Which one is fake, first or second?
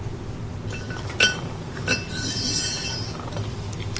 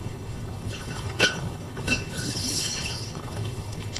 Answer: second